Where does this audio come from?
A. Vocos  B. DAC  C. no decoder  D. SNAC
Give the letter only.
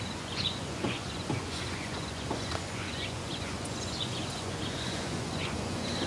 A